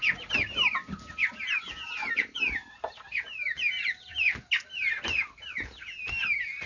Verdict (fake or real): real